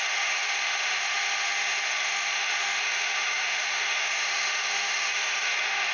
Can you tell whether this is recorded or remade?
remade